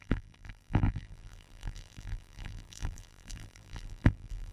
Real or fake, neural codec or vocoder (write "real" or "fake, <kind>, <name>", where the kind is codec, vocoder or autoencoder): fake, vocoder, BigVGAN v2